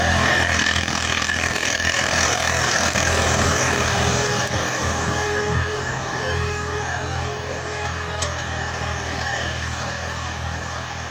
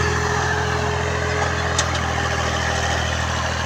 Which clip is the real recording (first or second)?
second